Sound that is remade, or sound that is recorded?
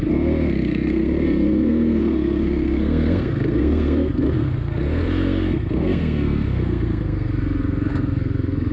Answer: remade